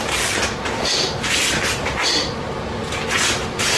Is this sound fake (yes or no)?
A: no